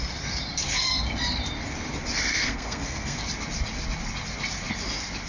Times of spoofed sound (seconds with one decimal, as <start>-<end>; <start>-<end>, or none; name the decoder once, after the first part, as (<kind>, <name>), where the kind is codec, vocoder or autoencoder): 2.3-3.2 (codec, SNAC)